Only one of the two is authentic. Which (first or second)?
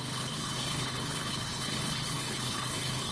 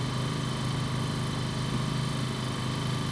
second